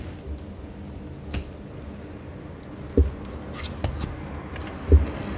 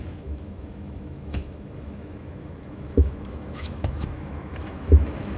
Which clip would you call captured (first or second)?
first